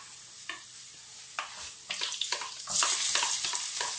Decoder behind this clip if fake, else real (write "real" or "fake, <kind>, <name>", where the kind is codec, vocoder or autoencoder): real